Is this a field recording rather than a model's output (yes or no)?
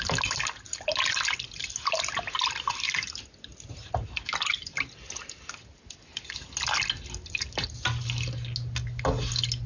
yes